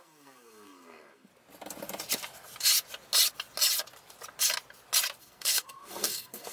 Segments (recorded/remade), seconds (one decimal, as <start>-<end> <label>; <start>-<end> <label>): 0.0-1.3 remade; 1.3-5.2 recorded; 5.2-6.5 remade